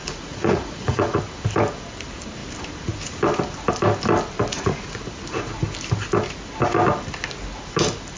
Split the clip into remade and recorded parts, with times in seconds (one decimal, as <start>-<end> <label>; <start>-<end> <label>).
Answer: 0.0-1.2 remade; 1.2-4.5 recorded; 4.5-5.0 remade; 5.0-8.2 recorded